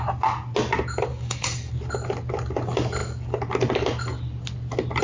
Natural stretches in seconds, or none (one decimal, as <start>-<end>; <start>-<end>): 0.0-1.1; 1.7-5.0